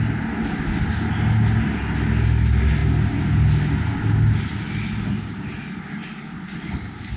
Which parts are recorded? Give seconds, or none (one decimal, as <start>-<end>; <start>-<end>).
0.0-7.2